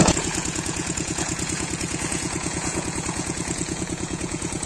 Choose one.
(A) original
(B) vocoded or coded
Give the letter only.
B